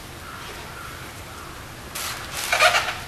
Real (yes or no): yes